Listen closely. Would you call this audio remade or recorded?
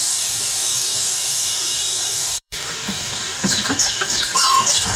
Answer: remade